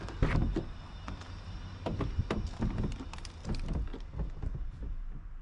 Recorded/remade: recorded